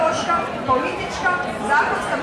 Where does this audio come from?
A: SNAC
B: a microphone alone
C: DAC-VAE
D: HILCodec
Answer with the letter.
B